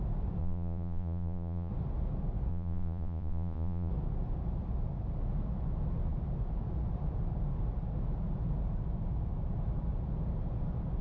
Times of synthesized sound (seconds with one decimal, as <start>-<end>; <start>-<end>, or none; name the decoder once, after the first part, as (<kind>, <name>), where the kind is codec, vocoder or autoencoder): 0.4-1.7 (vocoder, Vocos); 2.5-3.9